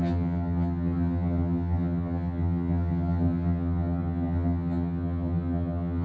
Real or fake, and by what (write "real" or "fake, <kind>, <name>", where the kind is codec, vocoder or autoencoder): fake, vocoder, HiFi-GAN